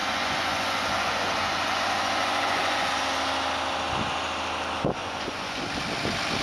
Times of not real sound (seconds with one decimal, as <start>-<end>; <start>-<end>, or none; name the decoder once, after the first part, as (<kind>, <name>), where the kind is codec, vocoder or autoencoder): 0.0-2.9 (vocoder, Vocos); 5.0-5.6